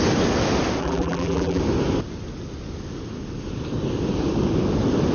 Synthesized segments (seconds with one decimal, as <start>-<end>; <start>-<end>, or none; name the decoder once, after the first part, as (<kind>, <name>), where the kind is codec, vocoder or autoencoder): 0.8-1.6 (vocoder, BigVGAN v2)